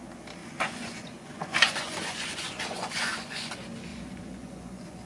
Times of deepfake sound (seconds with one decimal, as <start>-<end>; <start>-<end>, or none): 0.4-3.5; 3.9-5.1